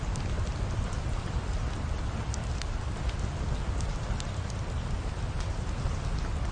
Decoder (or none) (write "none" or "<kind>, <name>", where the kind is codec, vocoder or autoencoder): none